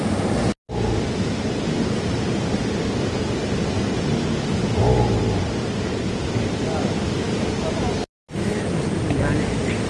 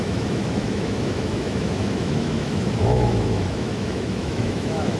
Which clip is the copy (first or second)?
second